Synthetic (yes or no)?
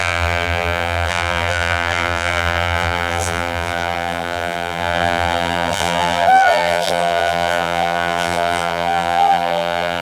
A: yes